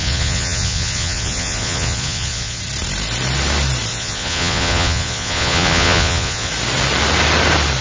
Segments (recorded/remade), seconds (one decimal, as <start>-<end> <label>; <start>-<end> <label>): 0.0-2.6 remade; 2.6-3.9 recorded; 3.9-6.5 remade; 6.5-7.8 recorded